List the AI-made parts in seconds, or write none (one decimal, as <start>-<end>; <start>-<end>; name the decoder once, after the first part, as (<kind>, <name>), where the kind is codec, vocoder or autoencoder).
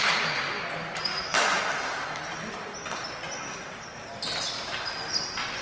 1.1-1.6 (autoencoder, DAC-VAE)